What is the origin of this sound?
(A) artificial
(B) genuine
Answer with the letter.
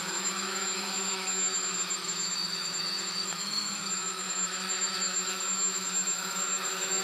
A